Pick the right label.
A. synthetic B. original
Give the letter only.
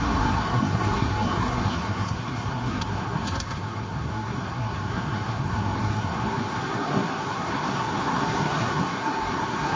A